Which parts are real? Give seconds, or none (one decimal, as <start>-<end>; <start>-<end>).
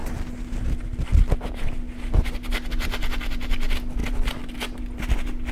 0.0-5.5